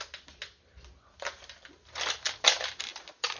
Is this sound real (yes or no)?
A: yes